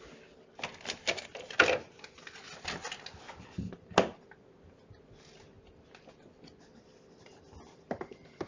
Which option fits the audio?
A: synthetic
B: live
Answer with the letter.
B